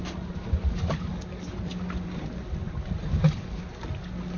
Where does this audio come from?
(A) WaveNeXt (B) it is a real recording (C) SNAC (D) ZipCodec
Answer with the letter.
B